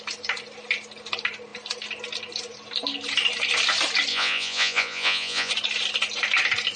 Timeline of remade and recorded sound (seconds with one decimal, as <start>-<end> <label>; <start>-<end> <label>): 0.0-4.1 recorded; 4.1-5.5 remade; 5.5-6.8 recorded